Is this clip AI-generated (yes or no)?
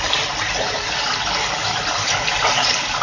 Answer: no